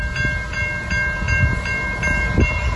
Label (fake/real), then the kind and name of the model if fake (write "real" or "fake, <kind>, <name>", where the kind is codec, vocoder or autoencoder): real